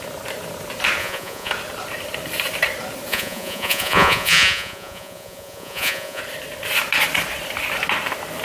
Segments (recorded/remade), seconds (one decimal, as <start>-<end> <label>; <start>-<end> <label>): 0.0-1.0 recorded; 1.0-1.5 remade; 1.5-3.1 recorded; 3.1-6.2 remade; 6.2-8.4 recorded